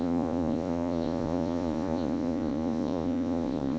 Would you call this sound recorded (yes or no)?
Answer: no